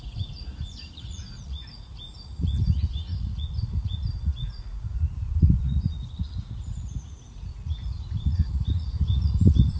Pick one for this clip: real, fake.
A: fake